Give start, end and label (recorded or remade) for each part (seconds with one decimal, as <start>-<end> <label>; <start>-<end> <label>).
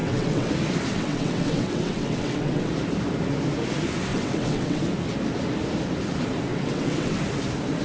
0.0-0.5 remade; 0.5-0.9 recorded; 0.9-2.7 remade; 2.7-4.1 recorded; 4.1-4.8 remade; 4.8-6.5 recorded; 6.5-7.2 remade; 7.2-7.8 recorded